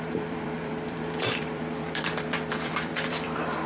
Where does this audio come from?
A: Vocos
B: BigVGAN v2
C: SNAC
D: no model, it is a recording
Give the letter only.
B